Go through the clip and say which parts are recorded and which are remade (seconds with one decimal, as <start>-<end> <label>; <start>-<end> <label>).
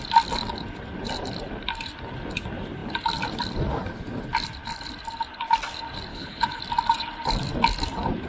0.0-6.1 recorded; 6.1-6.6 remade; 6.6-8.3 recorded